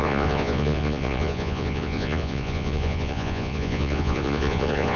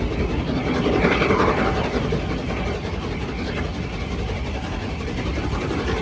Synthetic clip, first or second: first